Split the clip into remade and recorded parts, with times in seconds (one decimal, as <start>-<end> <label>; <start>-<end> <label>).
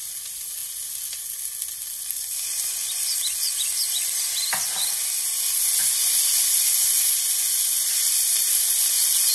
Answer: 0.0-9.3 recorded